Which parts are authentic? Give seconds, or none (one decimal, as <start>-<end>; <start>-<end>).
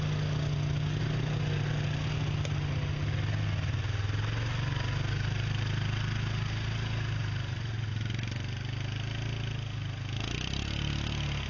0.0-11.5